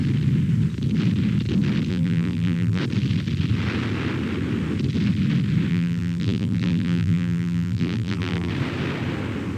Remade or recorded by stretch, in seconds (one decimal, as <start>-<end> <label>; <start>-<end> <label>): 0.0-1.9 recorded; 1.9-2.8 remade; 2.8-5.7 recorded; 5.7-8.5 remade; 8.5-9.6 recorded